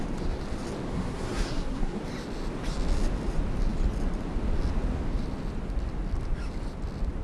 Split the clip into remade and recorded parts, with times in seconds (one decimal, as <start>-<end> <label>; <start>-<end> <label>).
0.0-0.9 recorded; 0.9-2.0 remade; 2.0-7.2 recorded